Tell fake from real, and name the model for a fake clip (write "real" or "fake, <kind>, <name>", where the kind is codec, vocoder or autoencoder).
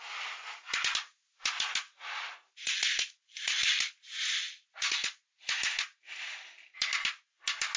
real